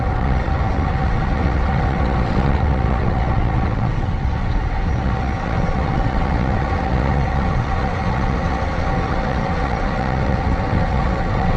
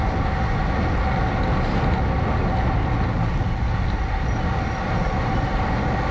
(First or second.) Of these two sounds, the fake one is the first